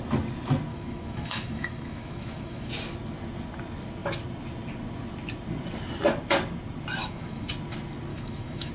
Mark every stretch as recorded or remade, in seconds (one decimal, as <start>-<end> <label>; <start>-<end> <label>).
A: 0.0-0.7 recorded; 0.7-2.7 remade; 2.7-7.0 recorded; 7.0-7.5 remade; 7.5-8.1 recorded; 8.1-8.7 remade